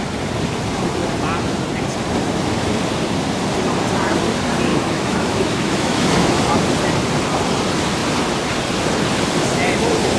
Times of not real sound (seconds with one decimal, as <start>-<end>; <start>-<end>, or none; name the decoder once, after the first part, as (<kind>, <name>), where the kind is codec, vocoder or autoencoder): 4.7-6.4 (autoencoder, DAC-VAE)